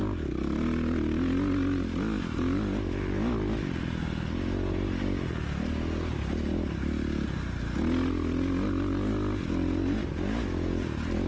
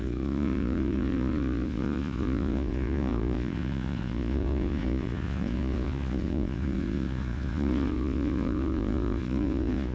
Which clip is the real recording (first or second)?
first